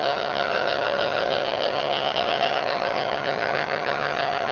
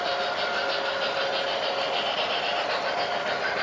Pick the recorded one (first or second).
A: second